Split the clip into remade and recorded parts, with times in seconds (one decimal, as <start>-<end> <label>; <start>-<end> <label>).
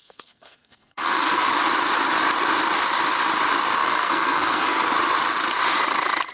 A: 0.0-1.5 remade; 1.5-3.8 recorded; 3.8-4.9 remade; 4.9-6.3 recorded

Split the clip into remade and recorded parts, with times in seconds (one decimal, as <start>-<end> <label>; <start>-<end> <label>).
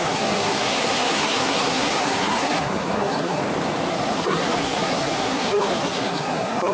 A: 0.0-3.4 remade; 3.4-3.9 recorded; 3.9-6.7 remade